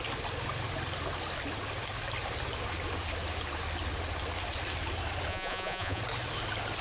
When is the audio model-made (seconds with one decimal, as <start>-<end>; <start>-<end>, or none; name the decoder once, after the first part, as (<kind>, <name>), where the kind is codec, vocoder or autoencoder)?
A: 5.3-6.0 (vocoder, Vocos)